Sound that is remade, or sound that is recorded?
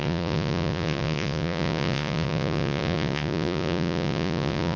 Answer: remade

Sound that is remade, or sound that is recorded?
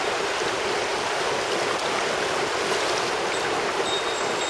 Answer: recorded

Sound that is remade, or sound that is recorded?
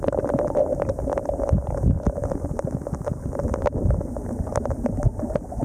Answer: recorded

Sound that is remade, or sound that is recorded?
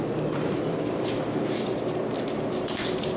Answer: remade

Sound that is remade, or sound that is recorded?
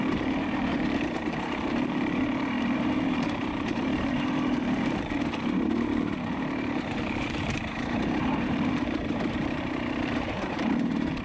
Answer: remade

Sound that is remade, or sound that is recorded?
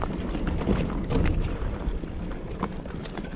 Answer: remade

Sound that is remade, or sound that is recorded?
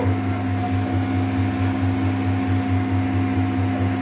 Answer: recorded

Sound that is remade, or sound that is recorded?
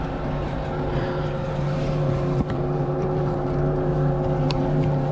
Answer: remade